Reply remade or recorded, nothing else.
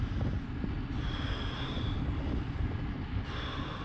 recorded